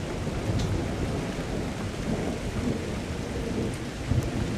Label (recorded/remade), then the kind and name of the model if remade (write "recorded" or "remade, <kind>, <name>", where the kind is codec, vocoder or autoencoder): recorded